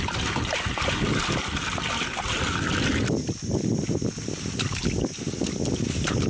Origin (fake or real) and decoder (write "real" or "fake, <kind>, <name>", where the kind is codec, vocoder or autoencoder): real